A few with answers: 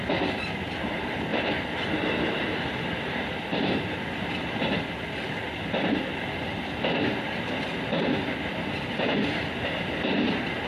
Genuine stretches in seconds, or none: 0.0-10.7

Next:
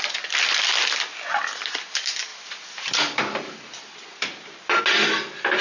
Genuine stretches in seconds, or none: 0.0-2.3; 4.8-5.6

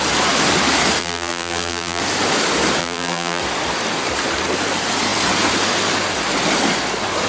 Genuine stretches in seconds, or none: 0.0-1.0; 2.0-2.8; 3.4-7.3